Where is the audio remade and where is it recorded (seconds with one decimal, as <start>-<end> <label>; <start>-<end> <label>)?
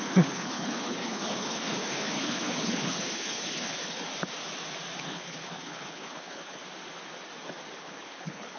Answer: 0.0-4.1 remade; 4.1-5.0 recorded; 5.0-6.6 remade; 6.6-7.8 recorded; 7.8-8.6 remade